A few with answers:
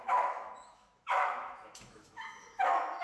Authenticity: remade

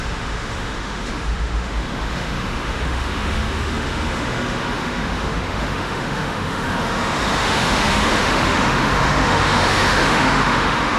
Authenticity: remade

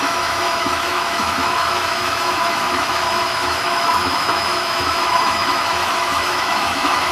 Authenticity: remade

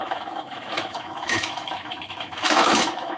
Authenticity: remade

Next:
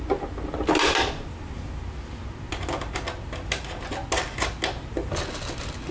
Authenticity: recorded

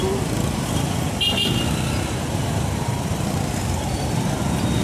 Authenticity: recorded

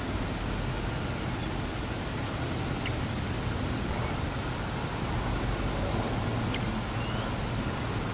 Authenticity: recorded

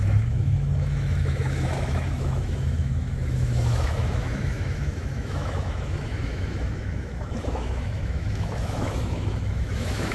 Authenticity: remade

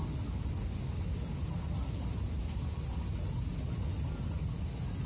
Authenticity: recorded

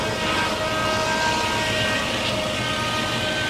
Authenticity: recorded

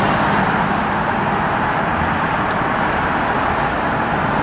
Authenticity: recorded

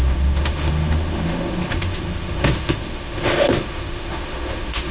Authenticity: remade